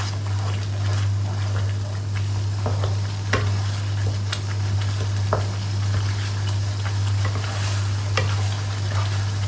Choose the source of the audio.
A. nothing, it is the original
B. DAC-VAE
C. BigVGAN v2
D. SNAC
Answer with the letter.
A